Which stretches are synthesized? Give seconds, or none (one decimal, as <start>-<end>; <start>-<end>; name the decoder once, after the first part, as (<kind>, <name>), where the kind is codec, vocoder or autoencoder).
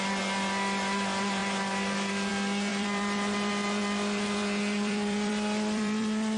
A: 1.4-2.3 (vocoder, BigVGAN v2); 2.7-6.4